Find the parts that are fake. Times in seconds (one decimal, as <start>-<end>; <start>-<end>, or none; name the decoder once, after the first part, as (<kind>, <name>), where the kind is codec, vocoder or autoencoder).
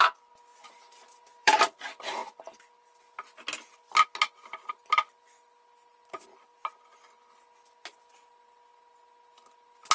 0.5-1.6 (vocoder, BigVGAN v2)